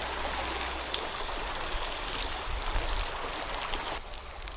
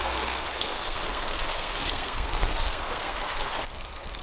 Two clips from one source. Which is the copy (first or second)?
second